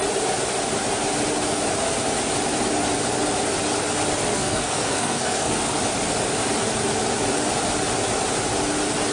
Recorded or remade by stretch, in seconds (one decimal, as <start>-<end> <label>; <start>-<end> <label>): 0.0-4.3 recorded; 4.3-5.8 remade; 5.8-9.1 recorded